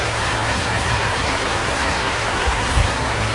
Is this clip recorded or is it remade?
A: remade